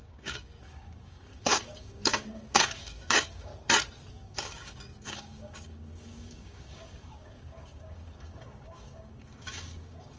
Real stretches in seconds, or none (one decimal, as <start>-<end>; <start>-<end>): 3.5-4.1